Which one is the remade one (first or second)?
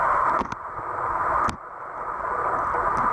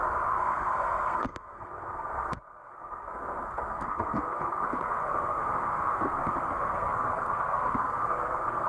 second